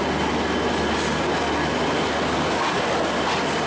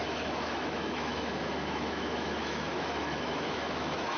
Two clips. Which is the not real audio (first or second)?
second